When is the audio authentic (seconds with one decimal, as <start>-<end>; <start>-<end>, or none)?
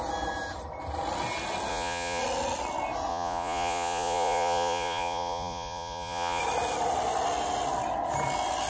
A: 0.0-1.7; 2.2-3.1; 6.4-8.7